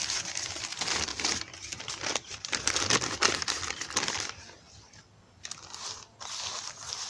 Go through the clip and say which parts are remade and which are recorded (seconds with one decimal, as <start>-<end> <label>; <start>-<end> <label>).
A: 0.0-1.1 recorded; 1.1-2.6 remade; 2.6-7.1 recorded